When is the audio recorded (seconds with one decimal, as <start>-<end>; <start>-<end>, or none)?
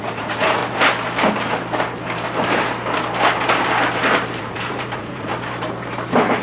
0.6-4.4; 5.3-6.4